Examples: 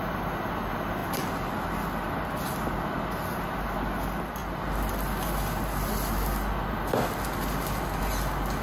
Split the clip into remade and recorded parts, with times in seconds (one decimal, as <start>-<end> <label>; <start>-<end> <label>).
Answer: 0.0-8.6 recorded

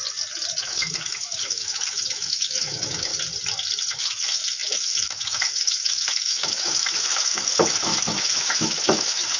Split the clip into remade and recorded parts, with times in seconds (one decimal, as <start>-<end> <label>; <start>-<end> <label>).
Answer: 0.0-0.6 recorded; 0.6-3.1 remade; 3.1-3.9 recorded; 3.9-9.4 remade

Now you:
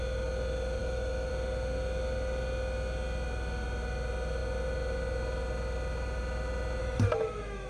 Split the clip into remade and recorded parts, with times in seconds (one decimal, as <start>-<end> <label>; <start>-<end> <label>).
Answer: 0.0-0.8 recorded; 0.8-1.3 remade; 1.3-6.8 recorded; 6.8-7.7 remade

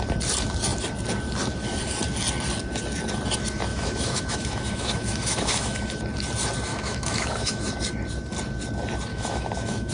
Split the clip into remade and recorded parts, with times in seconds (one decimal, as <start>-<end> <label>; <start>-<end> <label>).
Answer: 0.0-3.7 recorded; 3.7-6.0 remade; 6.0-6.7 recorded; 6.7-7.7 remade; 7.7-9.1 recorded; 9.1-9.9 remade

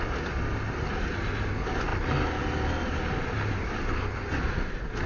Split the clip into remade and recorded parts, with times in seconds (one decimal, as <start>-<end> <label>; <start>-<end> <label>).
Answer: 0.0-5.1 recorded

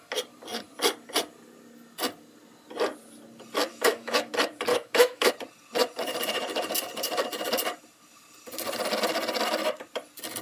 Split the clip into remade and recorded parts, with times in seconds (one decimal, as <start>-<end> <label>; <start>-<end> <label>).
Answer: 0.0-3.7 recorded; 3.7-4.3 remade; 4.3-4.7 recorded; 4.7-5.3 remade; 5.3-10.4 recorded

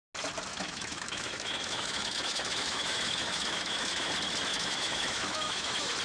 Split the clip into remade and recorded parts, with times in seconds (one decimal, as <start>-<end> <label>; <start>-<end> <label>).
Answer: 0.0-0.5 recorded; 0.5-4.1 remade; 4.1-4.5 recorded; 4.5-6.0 remade

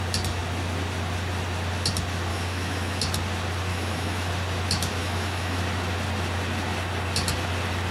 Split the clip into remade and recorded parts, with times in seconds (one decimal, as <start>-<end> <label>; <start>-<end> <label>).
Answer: 0.0-2.3 recorded; 2.3-3.0 remade; 3.0-3.7 recorded; 3.7-4.3 remade; 4.3-5.0 recorded; 5.0-5.6 remade; 5.6-7.9 recorded